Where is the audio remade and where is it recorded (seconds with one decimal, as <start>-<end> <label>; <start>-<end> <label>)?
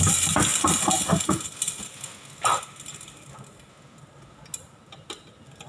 0.0-5.7 recorded